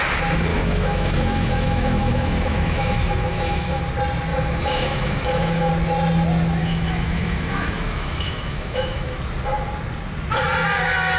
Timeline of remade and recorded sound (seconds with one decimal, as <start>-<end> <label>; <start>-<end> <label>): 0.0-0.5 recorded; 0.5-3.8 remade; 3.8-4.3 recorded; 4.3-5.7 remade; 5.7-6.6 recorded; 6.6-9.2 remade; 9.2-11.2 recorded